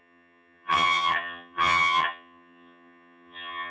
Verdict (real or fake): fake